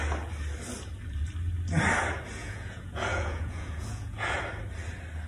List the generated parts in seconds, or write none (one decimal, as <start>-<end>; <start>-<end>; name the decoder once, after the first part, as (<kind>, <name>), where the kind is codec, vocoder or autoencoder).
2.4-4.4 (vocoder, Vocos)